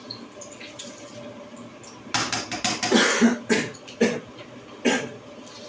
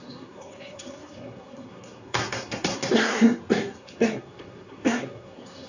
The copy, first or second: second